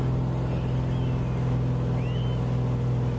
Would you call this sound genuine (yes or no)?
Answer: yes